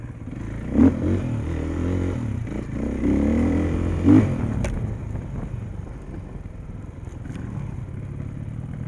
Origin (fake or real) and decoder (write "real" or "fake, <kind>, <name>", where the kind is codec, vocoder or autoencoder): real